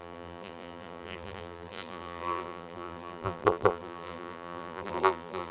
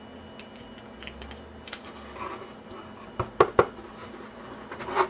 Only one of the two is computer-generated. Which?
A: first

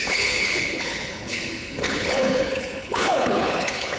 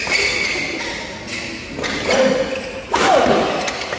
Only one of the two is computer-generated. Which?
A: first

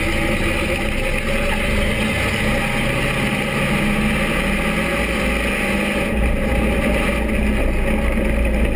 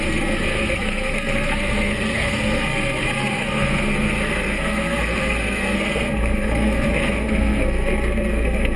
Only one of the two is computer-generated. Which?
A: second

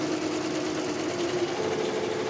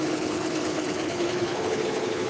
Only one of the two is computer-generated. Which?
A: second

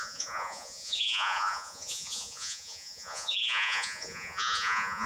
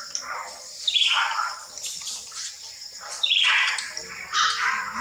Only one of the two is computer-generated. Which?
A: first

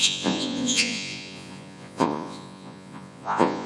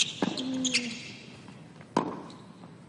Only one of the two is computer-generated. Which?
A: first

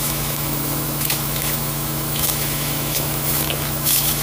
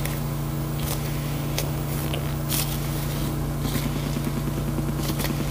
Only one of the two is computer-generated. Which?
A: first